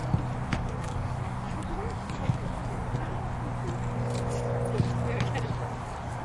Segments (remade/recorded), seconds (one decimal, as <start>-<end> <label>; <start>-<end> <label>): 0.0-0.6 recorded; 0.6-2.6 remade; 2.6-5.8 recorded; 5.8-6.2 remade